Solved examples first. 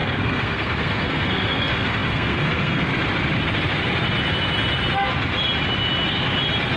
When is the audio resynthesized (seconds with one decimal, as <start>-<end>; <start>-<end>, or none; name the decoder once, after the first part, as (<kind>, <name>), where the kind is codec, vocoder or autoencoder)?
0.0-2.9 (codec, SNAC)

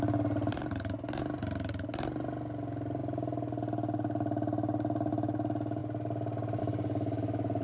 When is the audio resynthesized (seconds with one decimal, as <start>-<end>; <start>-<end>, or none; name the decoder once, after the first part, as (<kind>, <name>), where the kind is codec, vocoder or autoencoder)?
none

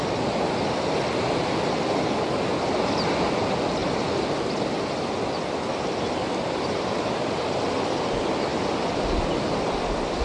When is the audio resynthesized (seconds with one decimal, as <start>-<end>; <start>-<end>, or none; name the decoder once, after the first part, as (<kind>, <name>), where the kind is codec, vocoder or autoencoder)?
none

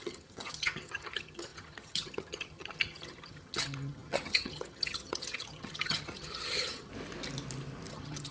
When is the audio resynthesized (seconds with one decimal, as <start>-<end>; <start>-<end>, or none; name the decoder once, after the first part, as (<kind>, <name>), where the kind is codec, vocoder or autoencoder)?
0.0-6.9 (vocoder, HiFi-GAN); 7.9-8.3

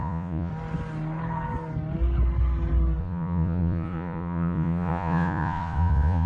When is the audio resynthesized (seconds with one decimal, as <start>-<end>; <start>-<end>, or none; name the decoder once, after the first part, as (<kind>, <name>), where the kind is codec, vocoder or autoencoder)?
0.0-0.5 (vocoder, Vocos); 3.0-6.3

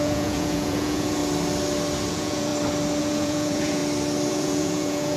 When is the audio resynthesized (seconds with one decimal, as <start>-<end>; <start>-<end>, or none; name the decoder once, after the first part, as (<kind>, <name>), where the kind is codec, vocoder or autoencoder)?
0.0-1.2 (vocoder, Vocos); 2.1-2.5; 3.0-3.8; 4.3-5.2